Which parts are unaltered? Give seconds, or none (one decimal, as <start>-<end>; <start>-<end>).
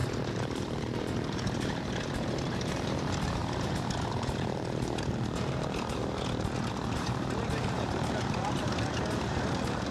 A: 3.4-4.1; 6.0-6.7